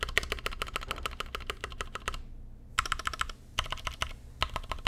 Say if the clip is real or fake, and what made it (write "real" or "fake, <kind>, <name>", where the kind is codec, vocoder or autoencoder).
real